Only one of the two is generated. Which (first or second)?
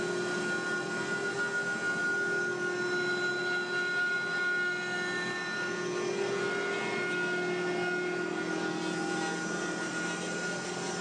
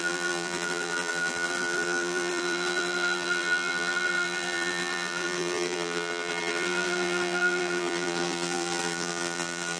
second